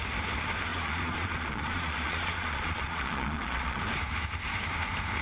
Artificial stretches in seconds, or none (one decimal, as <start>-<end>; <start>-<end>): 0.7-3.8